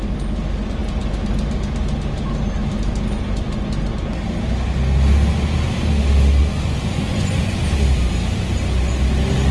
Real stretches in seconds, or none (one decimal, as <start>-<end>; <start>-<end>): 0.0-6.4; 7.6-9.5